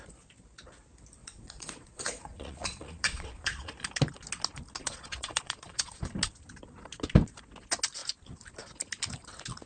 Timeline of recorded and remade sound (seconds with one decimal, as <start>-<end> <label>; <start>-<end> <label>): 0.0-1.2 recorded; 1.2-3.7 remade; 3.7-4.8 recorded; 4.8-6.0 remade; 6.0-9.7 recorded

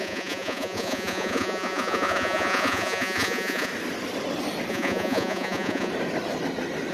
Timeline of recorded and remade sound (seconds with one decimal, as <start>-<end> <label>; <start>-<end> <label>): 0.0-3.7 remade; 3.7-4.7 recorded; 4.7-5.9 remade; 5.9-6.9 recorded